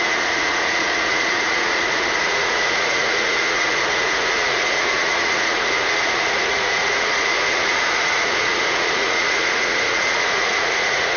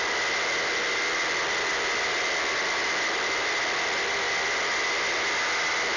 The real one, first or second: second